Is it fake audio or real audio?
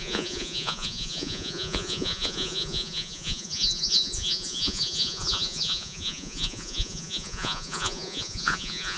fake